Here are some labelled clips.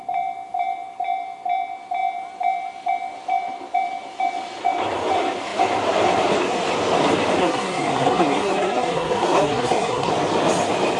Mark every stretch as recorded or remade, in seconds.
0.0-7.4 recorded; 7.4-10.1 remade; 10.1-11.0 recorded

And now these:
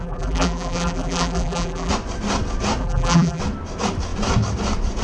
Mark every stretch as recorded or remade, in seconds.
0.0-1.9 remade; 1.9-2.8 recorded; 2.8-3.4 remade; 3.4-5.0 recorded

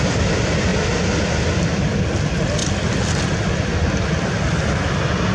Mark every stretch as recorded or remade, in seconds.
0.0-5.3 recorded

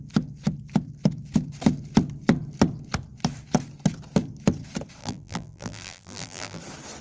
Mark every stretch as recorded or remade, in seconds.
0.0-5.0 recorded; 5.0-6.6 remade; 6.6-7.0 recorded

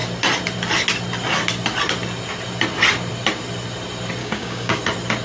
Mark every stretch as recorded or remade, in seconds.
0.0-4.2 recorded; 4.2-4.8 remade; 4.8-5.2 recorded

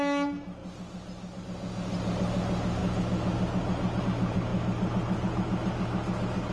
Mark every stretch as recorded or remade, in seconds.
0.0-6.5 recorded